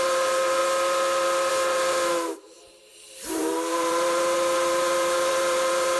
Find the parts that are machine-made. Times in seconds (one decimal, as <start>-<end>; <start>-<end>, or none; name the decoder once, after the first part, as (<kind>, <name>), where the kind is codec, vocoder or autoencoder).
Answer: 0.0-0.6 (vocoder, BigVGAN v2); 1.5-6.0